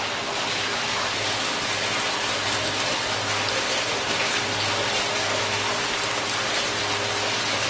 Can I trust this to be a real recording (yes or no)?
yes